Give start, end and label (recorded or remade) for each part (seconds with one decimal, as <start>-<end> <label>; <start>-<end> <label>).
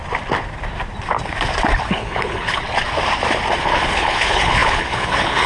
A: 0.0-1.8 recorded; 1.8-2.6 remade; 2.6-3.6 recorded; 3.6-5.5 remade